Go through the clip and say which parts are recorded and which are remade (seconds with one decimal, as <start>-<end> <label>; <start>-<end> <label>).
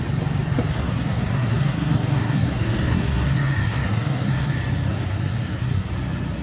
0.0-0.7 recorded; 0.7-4.5 remade; 4.5-4.9 recorded; 4.9-5.9 remade; 5.9-6.4 recorded